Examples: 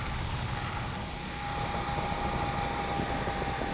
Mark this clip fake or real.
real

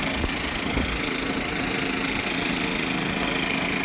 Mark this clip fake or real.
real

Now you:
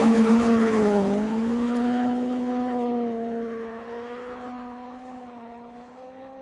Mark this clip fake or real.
fake